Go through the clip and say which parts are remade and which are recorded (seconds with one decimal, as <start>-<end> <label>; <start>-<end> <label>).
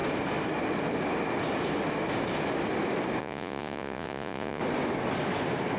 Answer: 0.0-3.2 recorded; 3.2-4.6 remade; 4.6-5.8 recorded